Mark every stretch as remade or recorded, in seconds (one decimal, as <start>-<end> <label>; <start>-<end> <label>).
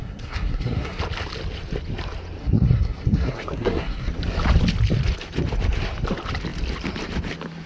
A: 0.0-1.0 remade; 1.0-2.4 recorded; 2.4-4.1 remade; 4.1-7.7 recorded